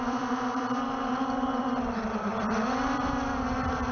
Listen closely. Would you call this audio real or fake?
fake